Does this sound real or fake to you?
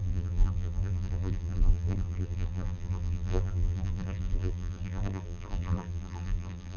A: fake